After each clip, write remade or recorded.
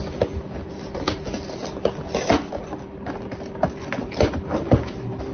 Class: recorded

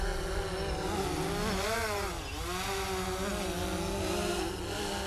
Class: recorded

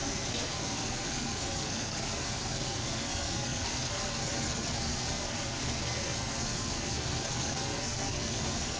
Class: remade